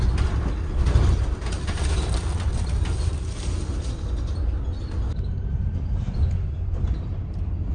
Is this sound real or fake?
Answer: real